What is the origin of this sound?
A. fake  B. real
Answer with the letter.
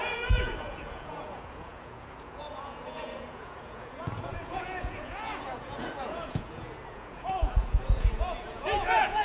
A